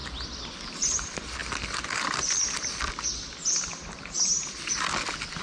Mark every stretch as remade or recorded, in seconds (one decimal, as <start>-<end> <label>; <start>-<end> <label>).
0.0-5.4 recorded